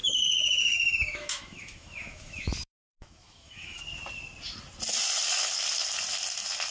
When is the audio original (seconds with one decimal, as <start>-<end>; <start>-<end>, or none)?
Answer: 3.8-6.7